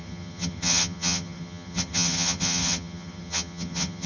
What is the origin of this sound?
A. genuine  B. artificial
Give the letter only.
B